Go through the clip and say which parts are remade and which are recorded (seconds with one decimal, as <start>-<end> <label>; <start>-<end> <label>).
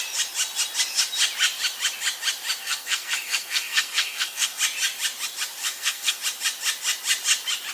0.0-2.6 recorded; 2.6-4.6 remade; 4.6-5.6 recorded; 5.6-6.2 remade; 6.2-7.7 recorded